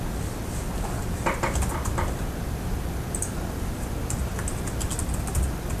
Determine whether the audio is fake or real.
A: real